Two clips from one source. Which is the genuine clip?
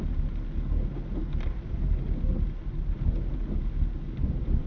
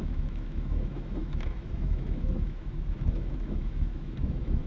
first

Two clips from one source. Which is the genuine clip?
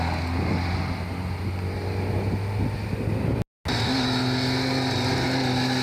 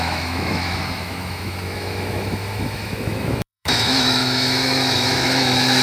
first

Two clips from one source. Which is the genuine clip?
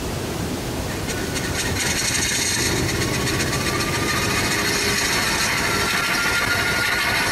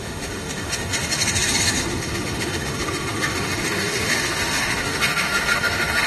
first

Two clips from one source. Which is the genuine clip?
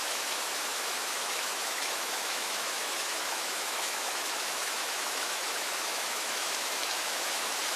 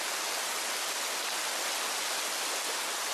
second